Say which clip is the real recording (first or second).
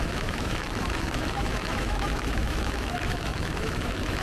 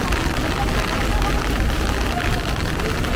second